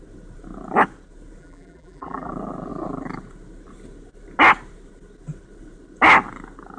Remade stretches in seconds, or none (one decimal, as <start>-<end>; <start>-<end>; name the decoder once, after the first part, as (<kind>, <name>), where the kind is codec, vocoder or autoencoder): 1.4-2.3 (vocoder, BigVGAN v2)